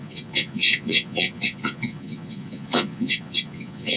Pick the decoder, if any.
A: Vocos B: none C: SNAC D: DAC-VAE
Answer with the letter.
A